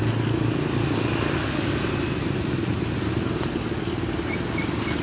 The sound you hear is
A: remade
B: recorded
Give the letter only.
B